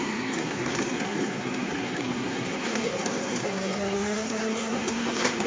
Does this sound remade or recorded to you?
remade